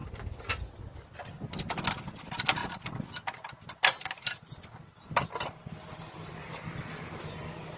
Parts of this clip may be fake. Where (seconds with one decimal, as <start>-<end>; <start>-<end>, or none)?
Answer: none